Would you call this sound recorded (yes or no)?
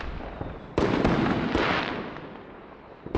yes